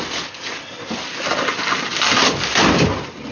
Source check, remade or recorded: recorded